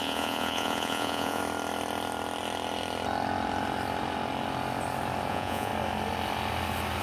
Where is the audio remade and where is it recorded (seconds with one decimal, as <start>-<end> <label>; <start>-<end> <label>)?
0.0-1.4 remade; 1.4-5.3 recorded; 5.3-5.7 remade; 5.7-7.0 recorded